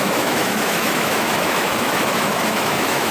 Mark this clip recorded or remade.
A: remade